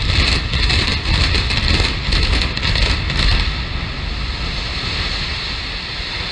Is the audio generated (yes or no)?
no